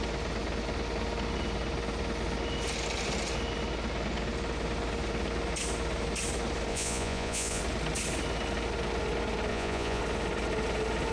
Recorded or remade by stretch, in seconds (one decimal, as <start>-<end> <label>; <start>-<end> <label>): 0.0-6.7 recorded; 6.7-7.6 remade; 7.6-9.5 recorded; 9.5-10.0 remade; 10.0-11.1 recorded